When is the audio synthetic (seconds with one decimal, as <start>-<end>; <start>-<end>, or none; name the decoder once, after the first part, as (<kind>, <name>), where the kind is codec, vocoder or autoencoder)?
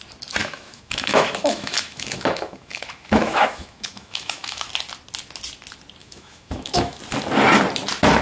0.4-4.7 (autoencoder, DAC-VAE); 6.0-7.0